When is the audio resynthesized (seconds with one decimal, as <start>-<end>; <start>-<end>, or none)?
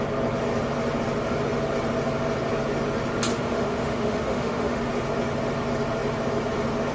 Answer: 3.3-4.8